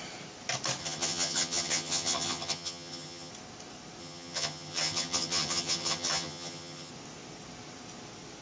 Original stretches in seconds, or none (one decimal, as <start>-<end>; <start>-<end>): 0.0-0.8; 3.3-4.0; 6.9-8.4